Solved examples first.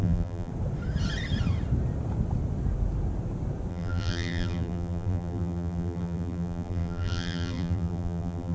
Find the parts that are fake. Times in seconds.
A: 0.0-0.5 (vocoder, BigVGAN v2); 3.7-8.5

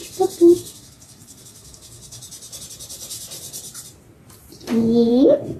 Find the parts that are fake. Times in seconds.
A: 0.5-2.2 (codec, SNAC); 5.1-5.6

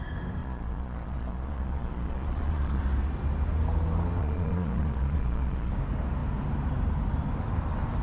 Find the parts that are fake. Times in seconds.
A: 0.4-2.8 (vocoder, Vocos); 4.2-5.7

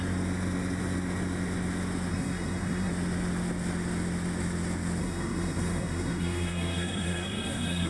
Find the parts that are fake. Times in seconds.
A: 2.1-2.9 (codec, SNAC); 5.0-7.9

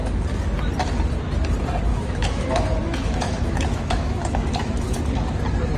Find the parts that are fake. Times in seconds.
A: 1.9-5.0 (autoencoder, DAC-VAE)

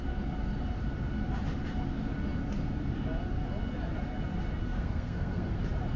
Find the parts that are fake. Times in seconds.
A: 4.6-5.6 (codec, SNAC)

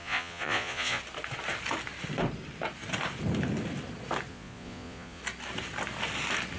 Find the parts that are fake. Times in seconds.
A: 0.0-1.0 (vocoder, Vocos); 4.3-5.2

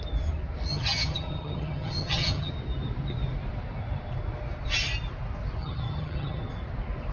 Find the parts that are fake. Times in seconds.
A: 0.7-2.5 (vocoder, HiFi-GAN); 5.6-6.4